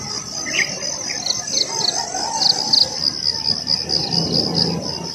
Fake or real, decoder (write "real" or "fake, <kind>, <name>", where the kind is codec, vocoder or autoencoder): real